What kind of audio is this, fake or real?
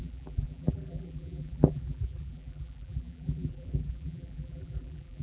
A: fake